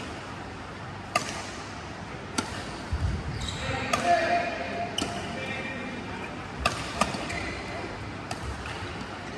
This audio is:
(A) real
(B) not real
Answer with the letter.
A